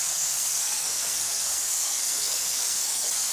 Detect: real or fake fake